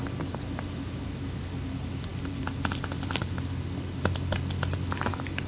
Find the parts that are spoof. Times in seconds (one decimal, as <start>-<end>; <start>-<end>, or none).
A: none

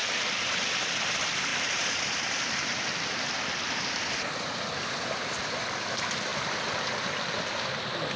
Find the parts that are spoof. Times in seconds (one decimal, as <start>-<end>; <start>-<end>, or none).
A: 1.1-6.3; 7.4-8.2

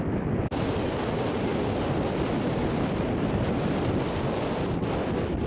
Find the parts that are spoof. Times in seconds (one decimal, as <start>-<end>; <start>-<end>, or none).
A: none

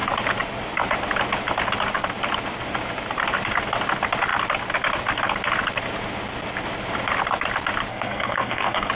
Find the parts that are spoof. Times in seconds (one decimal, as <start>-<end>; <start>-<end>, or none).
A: 7.9-8.9

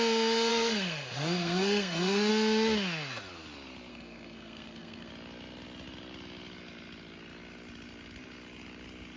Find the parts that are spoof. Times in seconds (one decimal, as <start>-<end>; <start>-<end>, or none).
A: 0.5-2.3; 3.9-5.1

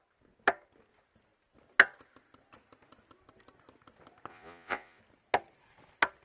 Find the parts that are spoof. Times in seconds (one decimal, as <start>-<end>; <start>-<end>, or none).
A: 4.3-5.0

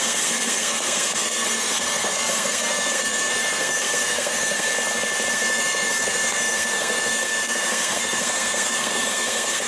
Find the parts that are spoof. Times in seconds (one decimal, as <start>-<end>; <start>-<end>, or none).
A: 0.0-4.7; 5.3-9.7